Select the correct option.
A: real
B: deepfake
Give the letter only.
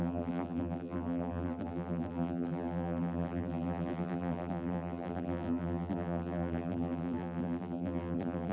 B